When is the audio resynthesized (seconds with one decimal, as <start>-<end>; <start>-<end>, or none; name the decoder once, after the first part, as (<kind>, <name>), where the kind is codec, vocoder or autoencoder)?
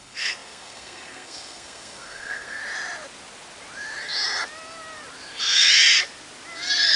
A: 0.0-2.6 (codec, SNAC)